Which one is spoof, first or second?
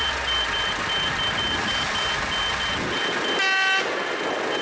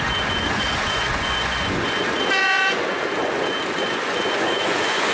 second